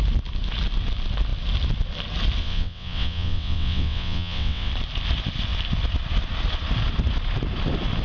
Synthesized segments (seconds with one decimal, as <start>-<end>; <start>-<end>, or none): 2.4-4.7